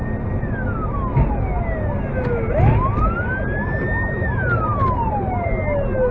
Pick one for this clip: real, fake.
real